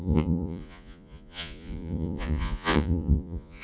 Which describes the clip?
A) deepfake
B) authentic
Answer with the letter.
A